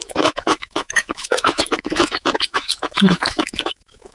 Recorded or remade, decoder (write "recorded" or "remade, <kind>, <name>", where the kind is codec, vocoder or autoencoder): remade, autoencoder, DAC-VAE